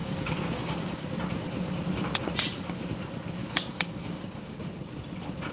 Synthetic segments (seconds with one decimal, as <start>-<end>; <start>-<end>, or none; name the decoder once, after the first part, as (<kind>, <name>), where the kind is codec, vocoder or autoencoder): 0.0-1.1 (codec, DAC); 3.4-4.6